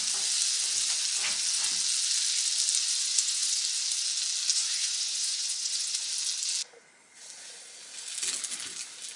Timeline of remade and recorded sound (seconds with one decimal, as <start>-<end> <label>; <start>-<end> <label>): 0.0-3.0 recorded; 3.0-3.6 remade; 3.6-4.5 recorded; 4.5-6.1 remade; 6.1-9.2 recorded